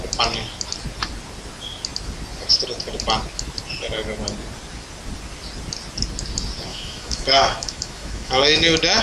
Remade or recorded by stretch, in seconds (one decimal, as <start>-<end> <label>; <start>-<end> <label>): 0.0-6.7 recorded; 6.7-9.0 remade